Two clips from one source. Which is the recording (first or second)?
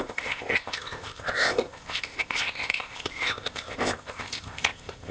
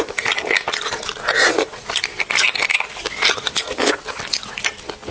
second